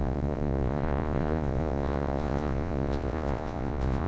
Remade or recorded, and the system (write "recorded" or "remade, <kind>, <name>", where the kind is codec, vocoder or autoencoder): remade, vocoder, Vocos